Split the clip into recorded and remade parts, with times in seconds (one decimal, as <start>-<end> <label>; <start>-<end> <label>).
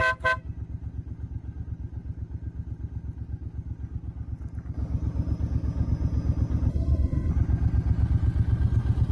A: 0.0-6.7 recorded; 6.7-7.3 remade; 7.3-9.1 recorded